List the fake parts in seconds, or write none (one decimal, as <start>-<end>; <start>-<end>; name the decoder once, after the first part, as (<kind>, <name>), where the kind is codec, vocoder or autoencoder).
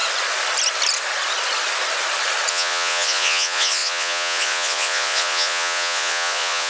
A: 2.5-6.7 (vocoder, Vocos)